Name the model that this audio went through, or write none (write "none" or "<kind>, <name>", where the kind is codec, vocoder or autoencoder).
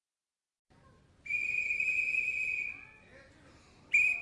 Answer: none